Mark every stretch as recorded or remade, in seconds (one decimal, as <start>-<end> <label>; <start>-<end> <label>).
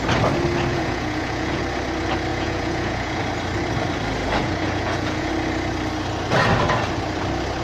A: 0.0-0.7 recorded; 0.7-1.6 remade; 1.6-2.3 recorded; 2.3-3.2 remade; 3.2-4.4 recorded; 4.4-5.3 remade; 5.3-7.6 recorded